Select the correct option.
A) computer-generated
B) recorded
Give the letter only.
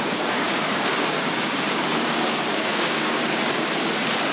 A